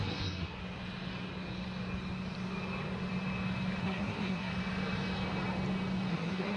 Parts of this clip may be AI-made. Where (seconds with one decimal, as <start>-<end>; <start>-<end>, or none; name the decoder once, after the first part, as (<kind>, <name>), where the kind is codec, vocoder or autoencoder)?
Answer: 0.0-0.6 (codec, SNAC); 3.8-4.5; 6.1-6.6